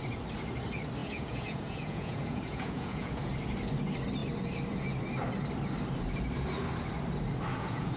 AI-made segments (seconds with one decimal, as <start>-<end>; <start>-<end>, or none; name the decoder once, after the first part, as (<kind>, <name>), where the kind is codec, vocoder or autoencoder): 1.0-3.3 (vocoder, Vocos); 7.5-8.0